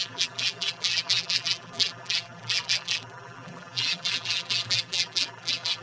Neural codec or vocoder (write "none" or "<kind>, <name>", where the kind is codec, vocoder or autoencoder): vocoder, BigVGAN v2